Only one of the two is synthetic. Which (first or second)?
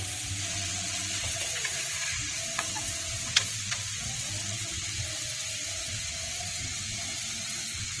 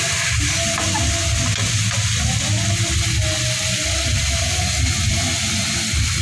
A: first